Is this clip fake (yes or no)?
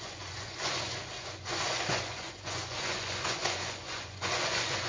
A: yes